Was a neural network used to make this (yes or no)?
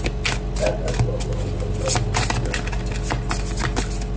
no